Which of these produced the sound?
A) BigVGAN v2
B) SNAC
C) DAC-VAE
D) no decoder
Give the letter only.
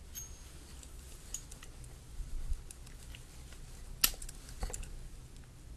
D